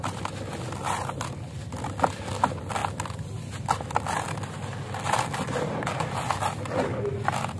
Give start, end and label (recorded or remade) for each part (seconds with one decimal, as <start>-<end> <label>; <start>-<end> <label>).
0.0-7.6 recorded